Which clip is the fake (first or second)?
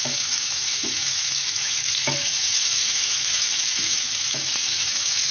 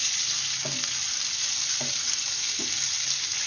first